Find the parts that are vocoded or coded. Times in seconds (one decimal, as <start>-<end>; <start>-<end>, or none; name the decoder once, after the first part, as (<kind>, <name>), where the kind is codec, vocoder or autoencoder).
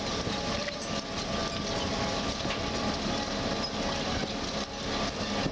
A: none